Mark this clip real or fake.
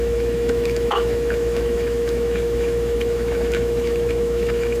fake